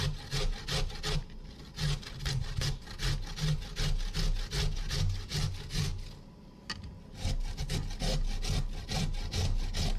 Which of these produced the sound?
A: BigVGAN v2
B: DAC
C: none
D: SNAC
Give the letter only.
C